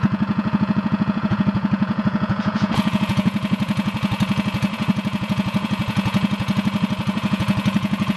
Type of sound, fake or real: fake